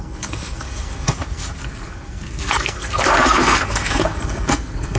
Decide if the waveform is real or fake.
fake